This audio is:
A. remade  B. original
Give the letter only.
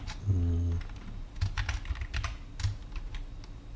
B